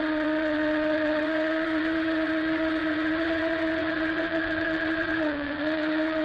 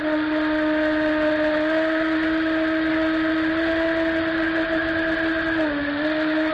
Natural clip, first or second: second